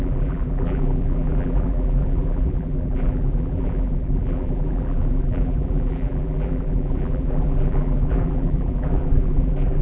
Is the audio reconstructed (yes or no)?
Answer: yes